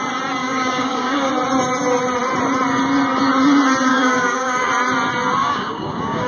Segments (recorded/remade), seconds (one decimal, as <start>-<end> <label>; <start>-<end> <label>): 0.0-0.4 recorded; 0.4-1.3 remade; 1.3-3.9 recorded; 3.9-4.7 remade; 4.7-5.4 recorded; 5.4-6.3 remade

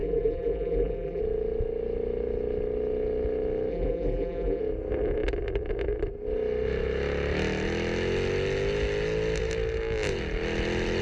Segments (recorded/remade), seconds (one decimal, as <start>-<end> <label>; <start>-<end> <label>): 0.0-1.2 remade; 1.2-3.7 recorded; 3.7-4.6 remade; 4.6-11.0 recorded